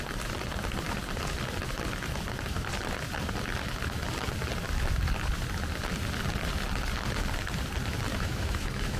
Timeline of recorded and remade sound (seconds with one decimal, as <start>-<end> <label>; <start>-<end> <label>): 0.0-8.1 recorded; 8.1-9.0 remade